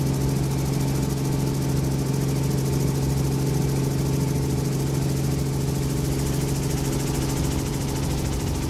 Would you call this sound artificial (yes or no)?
no